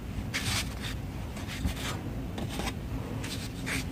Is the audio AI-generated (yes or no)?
no